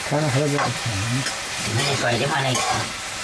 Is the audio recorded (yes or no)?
yes